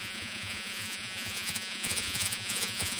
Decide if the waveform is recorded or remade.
remade